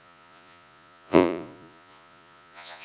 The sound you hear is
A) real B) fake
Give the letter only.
B